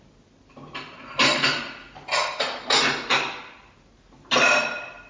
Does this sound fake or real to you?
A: real